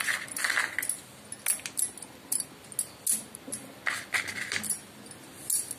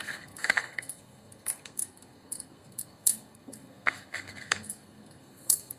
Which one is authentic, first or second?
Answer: first